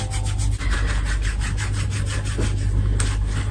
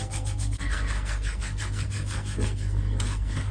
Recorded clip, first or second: first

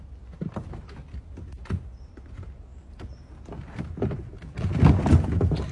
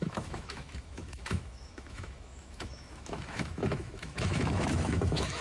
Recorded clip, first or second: first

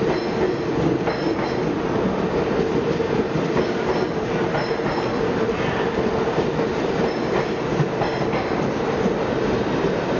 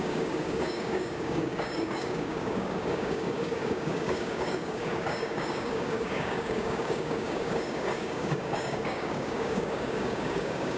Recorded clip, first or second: first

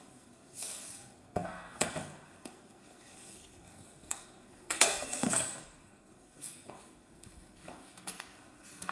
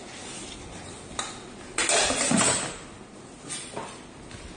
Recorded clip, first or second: second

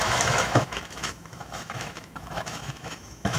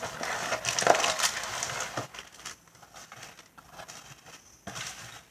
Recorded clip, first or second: second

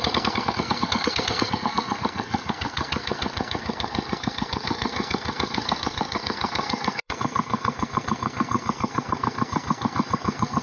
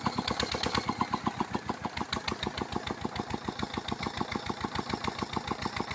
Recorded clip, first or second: second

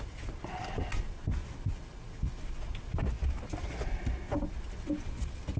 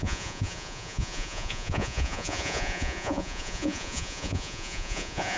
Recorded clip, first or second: first